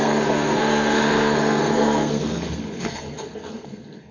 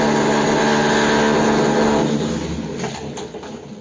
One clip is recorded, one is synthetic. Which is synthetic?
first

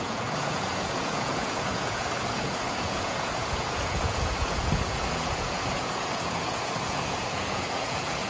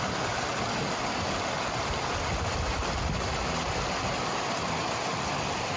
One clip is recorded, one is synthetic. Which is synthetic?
first